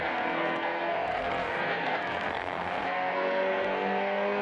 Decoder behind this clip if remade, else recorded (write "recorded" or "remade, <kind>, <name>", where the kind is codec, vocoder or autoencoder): remade, codec, SNAC